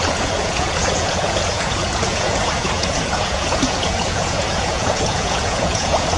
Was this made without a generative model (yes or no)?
no